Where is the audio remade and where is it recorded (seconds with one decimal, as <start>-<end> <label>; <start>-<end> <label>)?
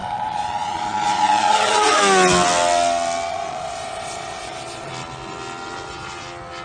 0.0-2.0 remade; 2.0-3.3 recorded; 3.3-4.9 remade; 4.9-6.6 recorded